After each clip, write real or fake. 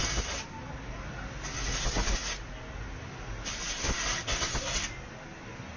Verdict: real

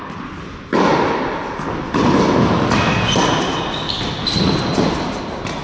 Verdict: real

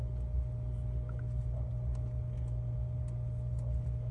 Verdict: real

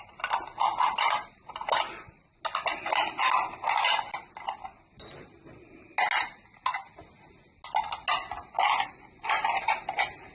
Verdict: real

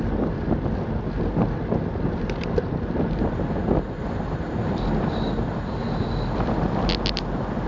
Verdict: real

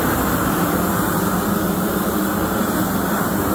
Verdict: fake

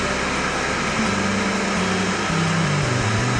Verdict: real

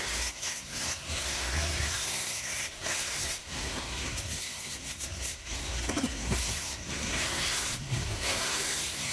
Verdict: fake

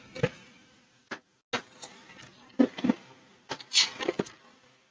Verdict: real